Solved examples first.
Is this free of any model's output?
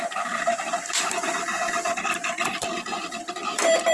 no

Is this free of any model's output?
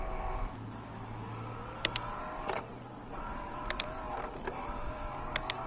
yes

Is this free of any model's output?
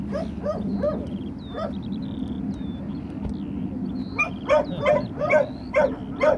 yes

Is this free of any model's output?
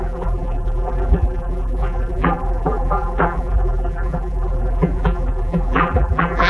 no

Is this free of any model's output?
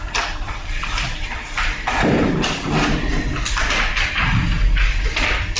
yes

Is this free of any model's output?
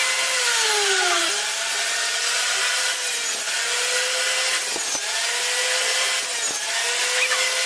yes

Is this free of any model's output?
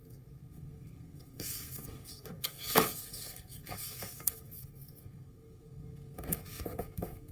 no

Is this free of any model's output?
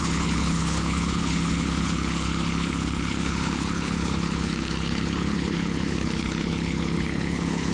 no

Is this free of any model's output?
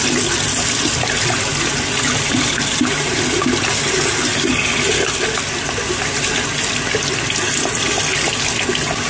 yes